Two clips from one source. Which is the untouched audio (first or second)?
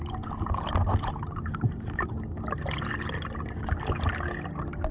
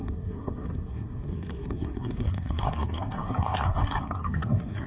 first